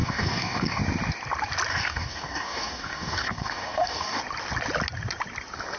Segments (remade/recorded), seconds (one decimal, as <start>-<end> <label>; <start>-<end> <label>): 0.0-0.8 remade; 0.8-1.7 recorded; 1.7-4.2 remade; 4.2-5.8 recorded